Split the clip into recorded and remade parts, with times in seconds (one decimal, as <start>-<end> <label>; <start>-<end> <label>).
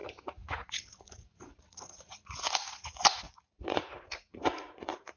0.0-5.2 remade